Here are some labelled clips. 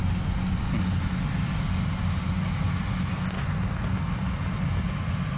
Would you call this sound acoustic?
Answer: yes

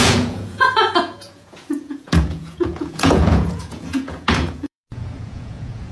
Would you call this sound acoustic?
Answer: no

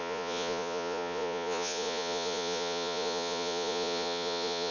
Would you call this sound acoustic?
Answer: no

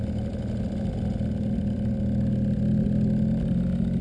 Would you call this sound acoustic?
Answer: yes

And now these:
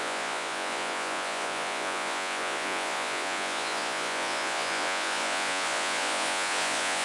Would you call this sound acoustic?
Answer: no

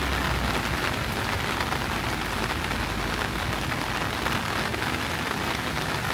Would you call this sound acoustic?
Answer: yes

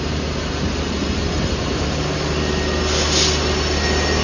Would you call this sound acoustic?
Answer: yes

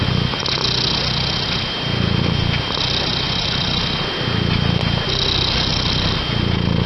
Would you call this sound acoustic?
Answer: yes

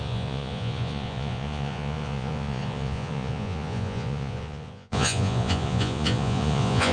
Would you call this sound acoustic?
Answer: no